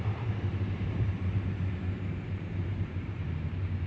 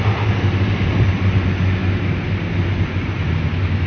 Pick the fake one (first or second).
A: first